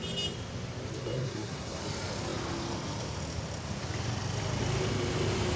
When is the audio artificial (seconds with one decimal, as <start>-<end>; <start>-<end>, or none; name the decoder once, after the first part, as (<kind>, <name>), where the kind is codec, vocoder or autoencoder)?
1.0-1.8 (codec, SNAC)